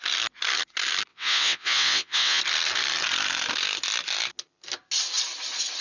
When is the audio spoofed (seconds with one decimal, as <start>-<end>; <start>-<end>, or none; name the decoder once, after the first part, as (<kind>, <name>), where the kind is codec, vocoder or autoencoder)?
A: 1.1-2.4 (vocoder, WaveNeXt)